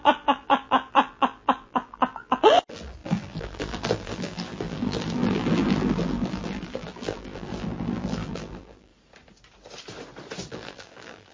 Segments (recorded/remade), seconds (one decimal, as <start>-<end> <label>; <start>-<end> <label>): 0.0-8.9 remade; 8.9-10.5 recorded; 10.5-11.3 remade